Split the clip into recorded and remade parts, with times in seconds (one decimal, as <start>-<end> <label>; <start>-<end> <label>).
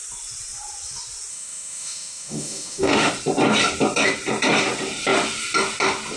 0.0-1.3 recorded; 1.3-3.1 remade; 3.1-6.2 recorded